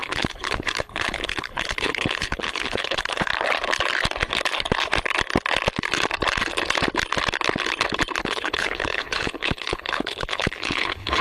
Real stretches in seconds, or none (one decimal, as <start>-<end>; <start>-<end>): 3.3-8.2